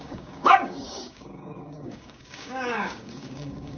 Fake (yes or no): yes